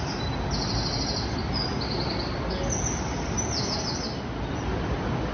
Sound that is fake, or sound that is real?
real